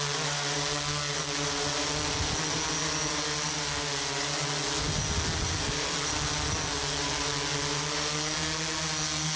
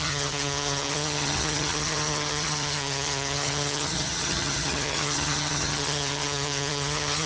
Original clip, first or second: first